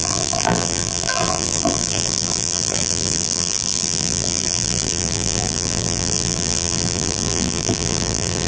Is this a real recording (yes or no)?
no